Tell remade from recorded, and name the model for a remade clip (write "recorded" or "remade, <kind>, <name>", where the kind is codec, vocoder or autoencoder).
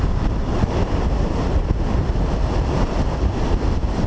remade, vocoder, BigVGAN v2